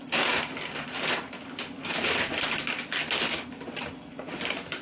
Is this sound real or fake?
real